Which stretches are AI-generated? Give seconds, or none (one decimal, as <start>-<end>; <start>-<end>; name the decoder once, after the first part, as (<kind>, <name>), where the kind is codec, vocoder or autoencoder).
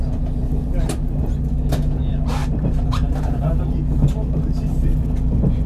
2.4-3.6 (vocoder, BigVGAN v2)